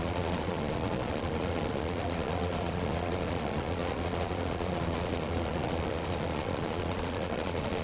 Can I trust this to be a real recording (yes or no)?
no